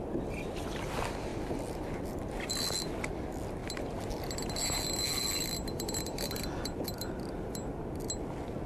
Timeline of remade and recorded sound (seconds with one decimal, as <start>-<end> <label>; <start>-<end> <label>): 0.0-8.7 recorded